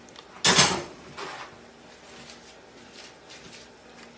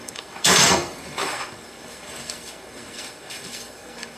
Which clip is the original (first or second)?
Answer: first